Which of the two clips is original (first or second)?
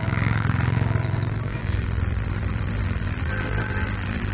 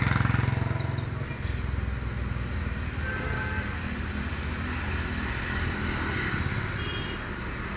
second